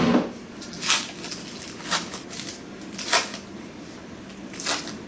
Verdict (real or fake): real